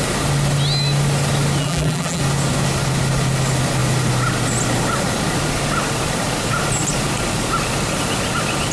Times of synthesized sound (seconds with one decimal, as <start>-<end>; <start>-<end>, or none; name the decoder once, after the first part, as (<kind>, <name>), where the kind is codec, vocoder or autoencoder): 1.6-2.2 (vocoder, BigVGAN v2)